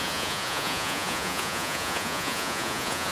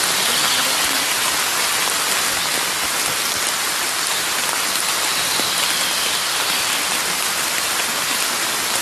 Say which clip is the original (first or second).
second